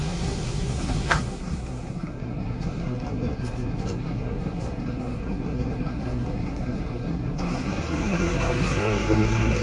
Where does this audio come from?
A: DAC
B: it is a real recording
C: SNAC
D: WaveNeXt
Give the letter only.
C